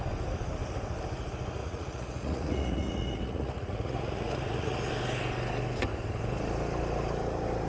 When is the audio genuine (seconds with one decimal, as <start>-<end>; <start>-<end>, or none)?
0.0-1.6; 4.9-7.7